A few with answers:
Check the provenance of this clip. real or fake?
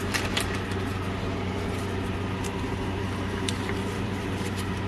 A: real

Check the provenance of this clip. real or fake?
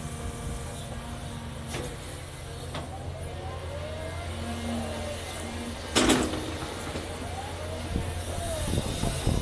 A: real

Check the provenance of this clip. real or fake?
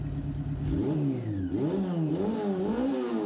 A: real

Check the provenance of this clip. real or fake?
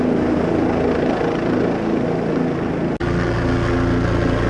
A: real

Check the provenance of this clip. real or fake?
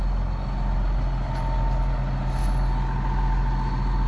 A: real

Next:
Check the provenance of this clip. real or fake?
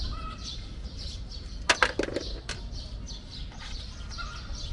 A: real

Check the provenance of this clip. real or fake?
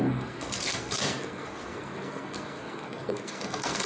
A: fake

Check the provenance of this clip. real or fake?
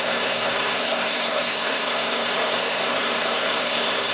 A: fake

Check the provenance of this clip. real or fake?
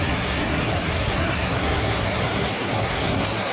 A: fake